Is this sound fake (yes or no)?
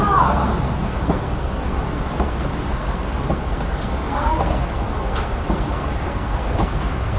yes